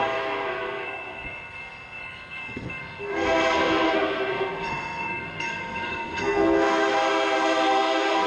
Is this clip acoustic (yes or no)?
no